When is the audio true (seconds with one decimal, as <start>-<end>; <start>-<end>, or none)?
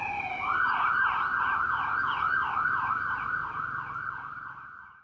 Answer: 0.0-5.0